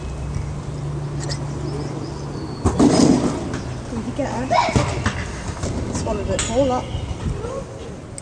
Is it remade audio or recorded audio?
recorded